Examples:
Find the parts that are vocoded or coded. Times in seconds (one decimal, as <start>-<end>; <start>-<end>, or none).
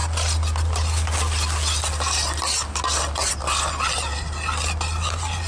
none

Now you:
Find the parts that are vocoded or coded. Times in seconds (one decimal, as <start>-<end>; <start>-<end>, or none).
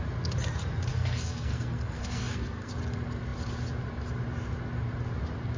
0.9-2.7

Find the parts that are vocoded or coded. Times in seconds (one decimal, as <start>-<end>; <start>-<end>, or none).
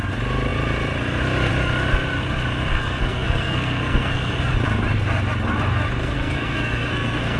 2.7-4.3; 6.0-7.4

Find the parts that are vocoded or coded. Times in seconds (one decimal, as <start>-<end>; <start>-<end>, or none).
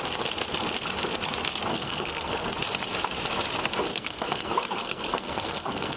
1.7-2.5; 3.9-6.0